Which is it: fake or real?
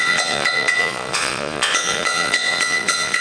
fake